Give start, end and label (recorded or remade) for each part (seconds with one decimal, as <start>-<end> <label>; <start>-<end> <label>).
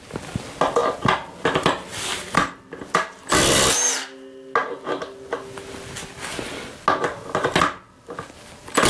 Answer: 0.0-8.9 recorded